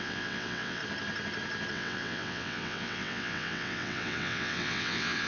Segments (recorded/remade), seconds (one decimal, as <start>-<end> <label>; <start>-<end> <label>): 0.0-0.8 remade; 0.8-1.7 recorded; 1.7-5.3 remade